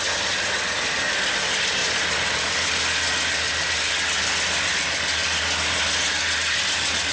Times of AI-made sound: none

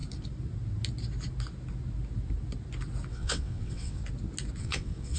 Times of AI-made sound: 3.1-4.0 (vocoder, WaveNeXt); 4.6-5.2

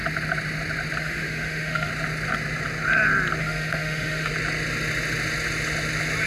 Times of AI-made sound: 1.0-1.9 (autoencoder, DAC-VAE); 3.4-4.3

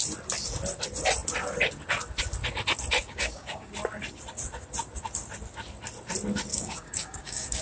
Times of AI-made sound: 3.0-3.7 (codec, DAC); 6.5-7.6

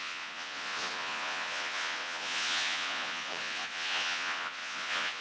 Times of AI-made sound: 0.0-5.2 (vocoder, Vocos)

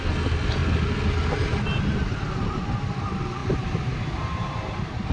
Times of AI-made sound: 3.4-5.1 (vocoder, BigVGAN v2)

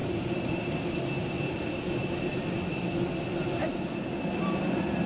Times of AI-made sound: 0.0-0.7 (vocoder, BigVGAN v2); 1.2-3.2; 3.6-5.1

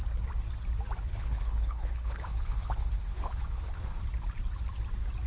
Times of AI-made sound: 1.1-4.0 (codec, HILCodec)